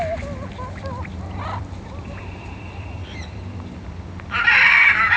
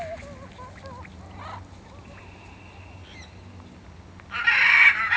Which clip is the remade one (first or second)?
first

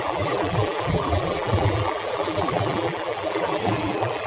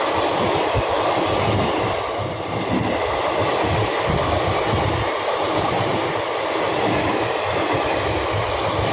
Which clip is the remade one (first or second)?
first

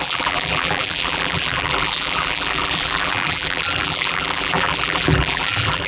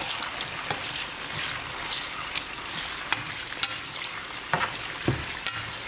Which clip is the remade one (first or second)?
first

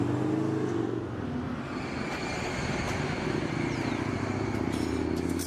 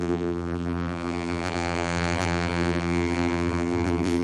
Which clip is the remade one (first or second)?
second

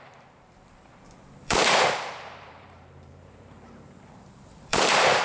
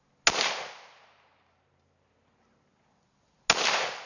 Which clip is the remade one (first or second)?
first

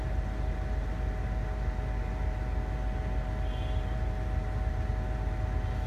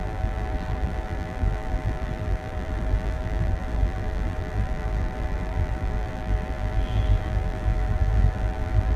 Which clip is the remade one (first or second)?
second